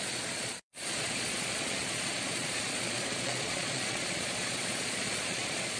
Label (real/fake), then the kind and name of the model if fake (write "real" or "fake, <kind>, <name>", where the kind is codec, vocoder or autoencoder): fake, vocoder, Vocos